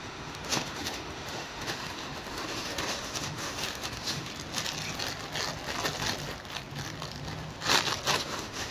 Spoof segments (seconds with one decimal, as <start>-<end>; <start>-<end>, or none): 0.0-4.3; 8.2-8.7

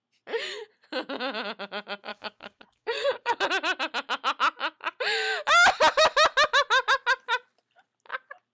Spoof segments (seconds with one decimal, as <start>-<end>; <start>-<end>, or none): 2.1-3.4

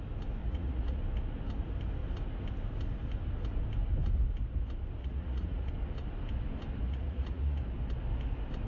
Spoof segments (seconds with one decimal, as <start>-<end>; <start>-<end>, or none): 0.4-1.0; 5.0-5.7; 6.8-7.6

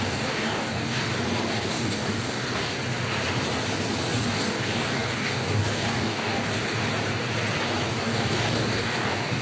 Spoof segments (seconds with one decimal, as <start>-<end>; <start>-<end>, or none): 0.0-1.0; 1.5-2.8; 4.1-6.6; 8.0-9.4